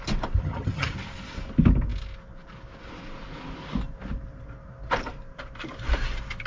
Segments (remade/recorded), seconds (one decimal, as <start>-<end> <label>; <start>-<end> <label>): 0.0-0.4 recorded; 0.4-0.9 remade; 0.9-6.5 recorded